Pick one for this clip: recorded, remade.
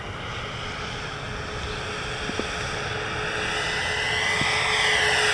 recorded